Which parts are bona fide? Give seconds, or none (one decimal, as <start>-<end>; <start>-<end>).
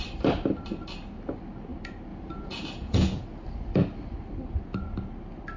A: 0.0-2.1; 3.2-5.6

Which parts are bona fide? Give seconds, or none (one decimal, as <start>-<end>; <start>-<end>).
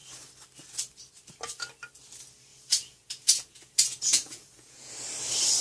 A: 0.0-2.5; 4.9-5.6